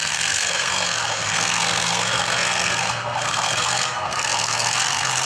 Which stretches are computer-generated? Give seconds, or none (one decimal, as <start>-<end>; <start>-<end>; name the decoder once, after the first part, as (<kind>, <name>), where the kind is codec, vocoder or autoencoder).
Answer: 0.0-5.3 (codec, SNAC)